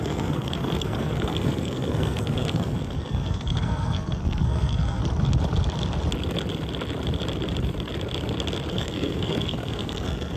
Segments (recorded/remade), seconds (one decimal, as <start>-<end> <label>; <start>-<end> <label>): 0.0-5.0 remade; 5.0-8.7 recorded; 8.7-10.4 remade